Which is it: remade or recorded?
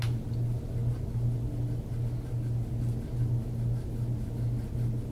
recorded